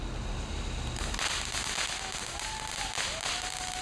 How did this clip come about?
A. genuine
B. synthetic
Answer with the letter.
A